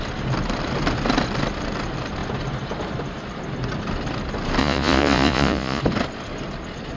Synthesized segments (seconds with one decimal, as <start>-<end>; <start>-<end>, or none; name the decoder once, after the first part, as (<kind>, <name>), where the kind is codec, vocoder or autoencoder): 4.6-5.8 (vocoder, Vocos)